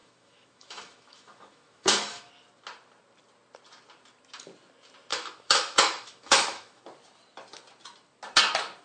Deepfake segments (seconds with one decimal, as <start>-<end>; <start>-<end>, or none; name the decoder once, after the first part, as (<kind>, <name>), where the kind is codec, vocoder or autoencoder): 0.0-2.3 (autoencoder, DAC-VAE); 5.1-6.8